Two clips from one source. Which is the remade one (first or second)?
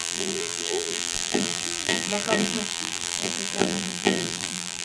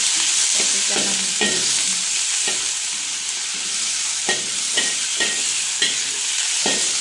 first